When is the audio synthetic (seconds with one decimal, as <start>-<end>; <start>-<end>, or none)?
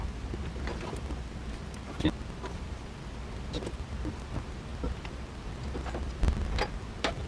none